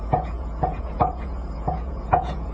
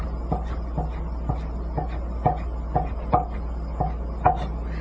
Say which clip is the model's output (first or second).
first